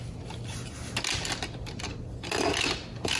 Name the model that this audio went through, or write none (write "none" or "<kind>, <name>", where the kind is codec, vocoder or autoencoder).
none